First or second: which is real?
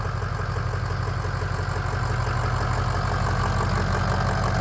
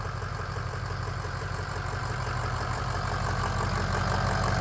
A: first